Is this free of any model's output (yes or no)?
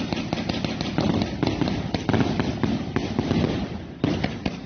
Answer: yes